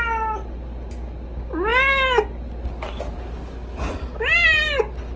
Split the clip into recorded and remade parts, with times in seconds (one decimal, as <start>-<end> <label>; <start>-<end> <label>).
0.0-5.2 recorded

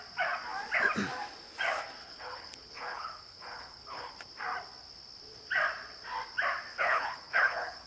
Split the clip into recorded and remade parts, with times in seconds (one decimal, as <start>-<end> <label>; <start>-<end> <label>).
0.0-2.0 recorded; 2.0-4.1 remade; 4.1-6.7 recorded; 6.7-7.9 remade

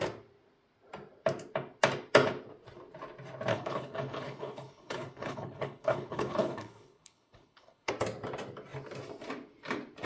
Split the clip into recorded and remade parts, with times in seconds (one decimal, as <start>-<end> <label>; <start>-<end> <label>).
0.0-3.5 recorded; 3.5-7.9 remade; 7.9-10.1 recorded

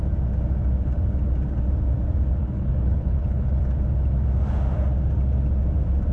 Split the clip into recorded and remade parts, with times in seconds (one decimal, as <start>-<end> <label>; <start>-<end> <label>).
0.0-2.4 recorded; 2.4-3.6 remade; 3.6-6.1 recorded

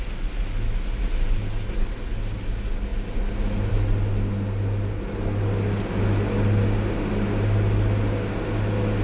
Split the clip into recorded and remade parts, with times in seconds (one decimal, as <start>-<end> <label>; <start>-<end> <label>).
0.0-9.0 recorded